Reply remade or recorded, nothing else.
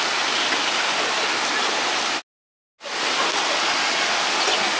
recorded